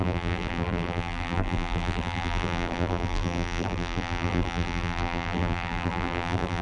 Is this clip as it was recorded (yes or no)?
no